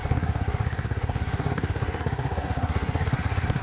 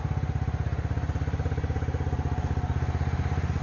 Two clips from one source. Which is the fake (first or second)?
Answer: first